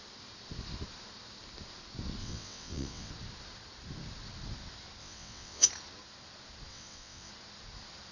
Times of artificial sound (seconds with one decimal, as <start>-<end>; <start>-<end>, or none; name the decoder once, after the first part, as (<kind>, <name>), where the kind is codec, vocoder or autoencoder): 2.2-3.1 (vocoder, WaveNeXt); 5.0-5.7; 6.7-7.3